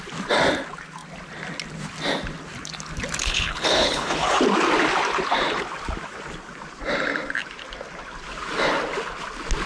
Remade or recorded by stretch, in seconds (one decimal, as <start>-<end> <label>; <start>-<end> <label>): 0.0-3.2 recorded; 3.2-4.4 remade; 4.4-9.7 recorded